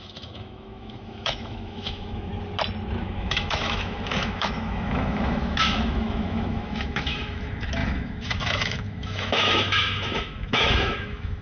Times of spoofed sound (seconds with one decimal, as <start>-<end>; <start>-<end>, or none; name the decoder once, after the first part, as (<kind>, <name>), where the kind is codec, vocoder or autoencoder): 0.0-2.3 (autoencoder, DAC-VAE); 3.0-11.4